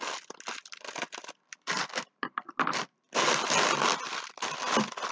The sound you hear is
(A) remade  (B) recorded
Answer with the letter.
B